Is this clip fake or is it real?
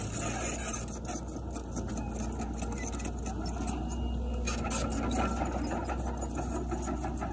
real